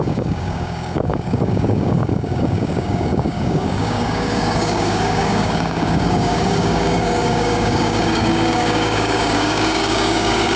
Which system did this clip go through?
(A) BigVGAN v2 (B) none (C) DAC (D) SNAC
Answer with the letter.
C